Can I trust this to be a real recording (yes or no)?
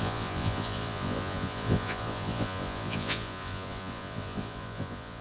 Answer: no